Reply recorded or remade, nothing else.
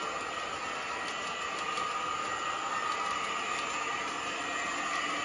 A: recorded